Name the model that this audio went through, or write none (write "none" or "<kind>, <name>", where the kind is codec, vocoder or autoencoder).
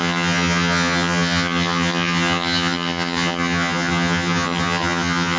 vocoder, HiFi-GAN